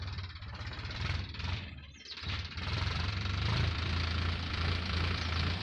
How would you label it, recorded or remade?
remade